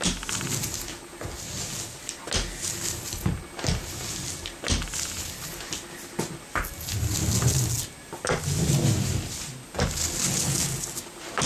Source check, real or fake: real